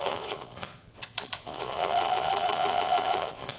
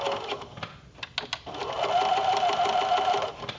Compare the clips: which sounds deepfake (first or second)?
first